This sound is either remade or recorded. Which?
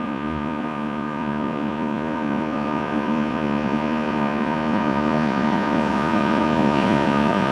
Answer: remade